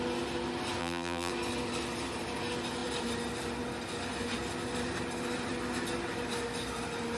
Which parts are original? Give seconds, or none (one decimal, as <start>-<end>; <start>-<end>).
0.0-0.8; 1.3-7.2